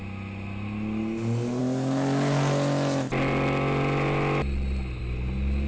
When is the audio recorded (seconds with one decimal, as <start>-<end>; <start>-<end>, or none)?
0.0-5.7